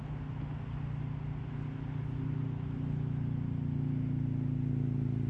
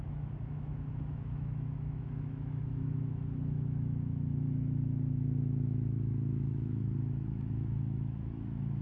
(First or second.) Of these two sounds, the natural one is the first